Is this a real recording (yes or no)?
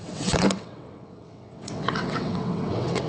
no